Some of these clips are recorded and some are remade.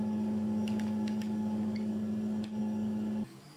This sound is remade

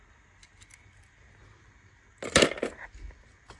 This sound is recorded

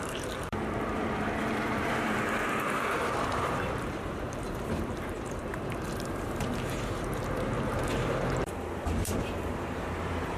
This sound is remade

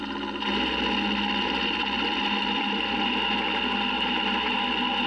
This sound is recorded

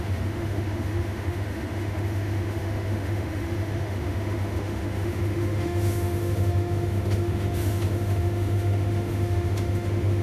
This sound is remade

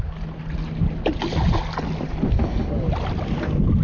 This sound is recorded